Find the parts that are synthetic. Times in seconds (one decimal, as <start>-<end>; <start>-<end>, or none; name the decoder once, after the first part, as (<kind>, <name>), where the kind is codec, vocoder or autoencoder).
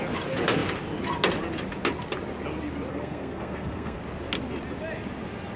2.9-4.0 (codec, SNAC)